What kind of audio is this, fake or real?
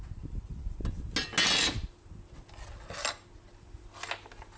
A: real